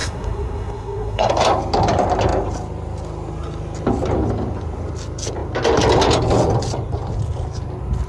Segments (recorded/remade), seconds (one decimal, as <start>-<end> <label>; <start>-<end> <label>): 0.0-1.3 remade; 1.3-8.1 recorded

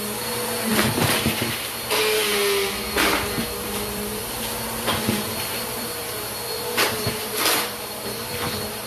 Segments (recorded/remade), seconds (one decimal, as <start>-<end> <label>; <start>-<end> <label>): 0.0-8.9 remade

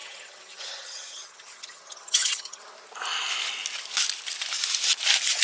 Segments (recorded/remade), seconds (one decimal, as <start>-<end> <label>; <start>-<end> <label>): 0.0-2.6 remade; 2.6-5.4 recorded

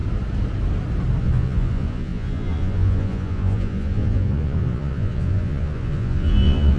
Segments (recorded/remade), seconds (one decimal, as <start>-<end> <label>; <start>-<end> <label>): 0.0-1.2 recorded; 1.2-6.8 remade